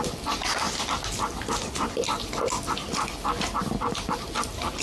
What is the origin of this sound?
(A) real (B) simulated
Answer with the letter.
A